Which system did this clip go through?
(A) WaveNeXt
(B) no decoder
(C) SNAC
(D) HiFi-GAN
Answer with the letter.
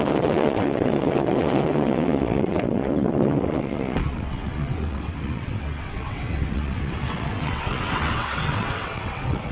A